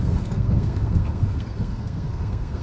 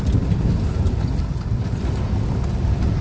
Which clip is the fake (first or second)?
first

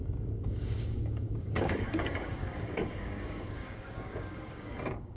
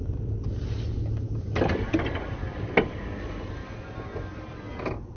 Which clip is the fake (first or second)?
first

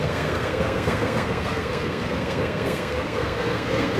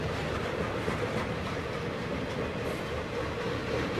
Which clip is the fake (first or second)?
first